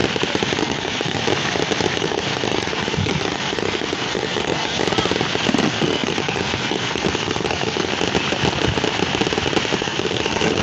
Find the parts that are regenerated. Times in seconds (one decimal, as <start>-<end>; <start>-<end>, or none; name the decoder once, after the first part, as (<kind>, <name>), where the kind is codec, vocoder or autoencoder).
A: 0.6-1.2 (codec, SNAC); 2.0-4.8; 5.6-7.9; 9.8-10.6